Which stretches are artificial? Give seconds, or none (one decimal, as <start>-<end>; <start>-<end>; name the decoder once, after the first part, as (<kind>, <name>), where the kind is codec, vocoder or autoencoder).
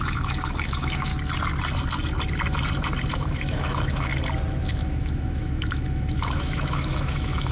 0.0-1.1 (autoencoder, DAC-VAE); 3.1-4.1; 4.7-7.5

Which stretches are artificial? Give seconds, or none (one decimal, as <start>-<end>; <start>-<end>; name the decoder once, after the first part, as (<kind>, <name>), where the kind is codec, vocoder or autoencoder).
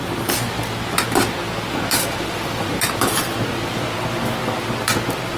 none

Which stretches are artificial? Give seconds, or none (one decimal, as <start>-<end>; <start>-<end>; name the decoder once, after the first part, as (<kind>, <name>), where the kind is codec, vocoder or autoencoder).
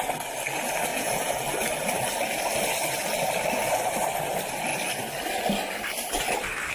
0.9-1.4 (vocoder, Vocos)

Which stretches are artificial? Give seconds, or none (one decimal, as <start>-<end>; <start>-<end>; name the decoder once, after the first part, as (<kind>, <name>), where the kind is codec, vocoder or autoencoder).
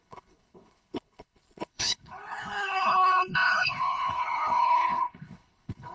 0.0-5.9 (codec, HILCodec)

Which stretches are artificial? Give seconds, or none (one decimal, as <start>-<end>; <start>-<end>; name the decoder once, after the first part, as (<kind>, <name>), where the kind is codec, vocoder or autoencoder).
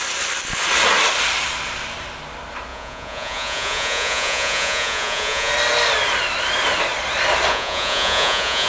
2.7-5.5 (vocoder, Vocos); 7.5-8.7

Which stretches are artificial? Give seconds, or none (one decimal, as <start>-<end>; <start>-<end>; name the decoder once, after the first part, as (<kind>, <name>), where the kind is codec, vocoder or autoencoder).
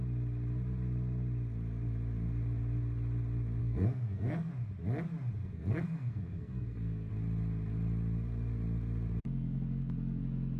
3.6-4.5 (codec, SNAC); 5.4-7.1; 9.2-10.2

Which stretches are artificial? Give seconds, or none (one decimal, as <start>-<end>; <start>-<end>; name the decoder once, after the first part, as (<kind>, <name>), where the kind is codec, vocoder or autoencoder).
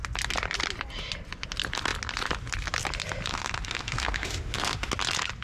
3.3-4.9 (autoencoder, DAC-VAE)